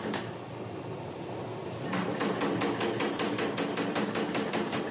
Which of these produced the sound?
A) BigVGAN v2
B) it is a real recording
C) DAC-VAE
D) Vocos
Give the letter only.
B